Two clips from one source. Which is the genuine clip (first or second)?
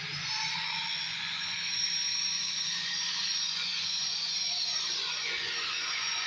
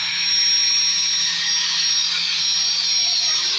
second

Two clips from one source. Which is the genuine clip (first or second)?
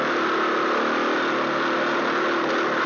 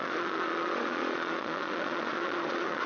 first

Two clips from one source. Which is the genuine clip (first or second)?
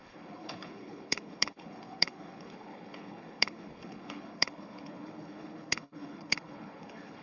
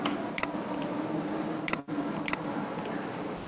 second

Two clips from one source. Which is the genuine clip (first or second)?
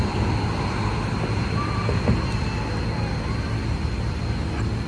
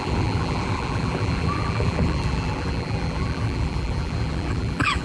first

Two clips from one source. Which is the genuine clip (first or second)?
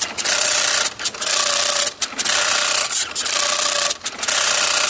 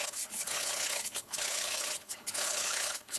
first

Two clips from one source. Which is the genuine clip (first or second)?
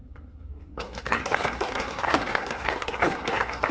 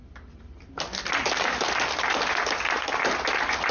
second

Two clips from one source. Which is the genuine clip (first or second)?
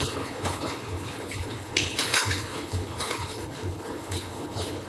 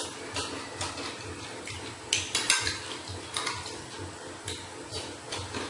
second